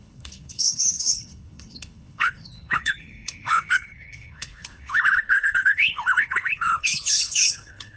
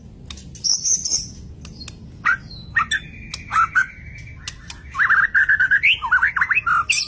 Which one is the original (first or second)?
second